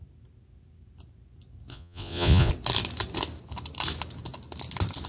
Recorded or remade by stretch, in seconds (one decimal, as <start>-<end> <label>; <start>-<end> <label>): 0.0-1.7 recorded; 1.7-2.5 remade; 2.5-5.1 recorded